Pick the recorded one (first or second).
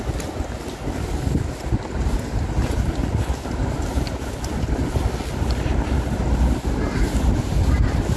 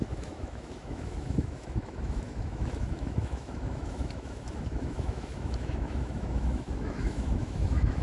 first